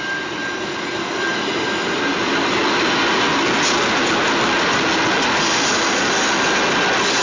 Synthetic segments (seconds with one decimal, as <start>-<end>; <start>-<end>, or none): none